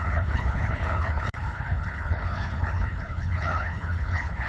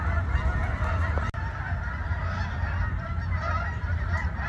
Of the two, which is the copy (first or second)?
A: first